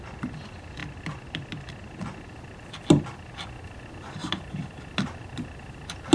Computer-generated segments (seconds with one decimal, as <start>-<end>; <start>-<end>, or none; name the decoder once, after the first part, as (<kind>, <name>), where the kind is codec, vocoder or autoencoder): 4.2-4.8 (vocoder, BigVGAN v2)